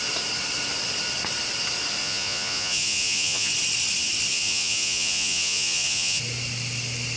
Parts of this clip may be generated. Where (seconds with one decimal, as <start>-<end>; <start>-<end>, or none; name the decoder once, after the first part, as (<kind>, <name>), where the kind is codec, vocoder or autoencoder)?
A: 2.0-3.5 (vocoder, Vocos); 4.3-6.2